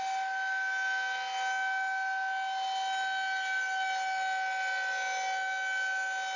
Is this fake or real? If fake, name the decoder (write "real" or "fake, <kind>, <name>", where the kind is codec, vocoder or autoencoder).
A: real